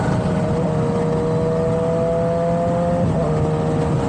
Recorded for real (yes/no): yes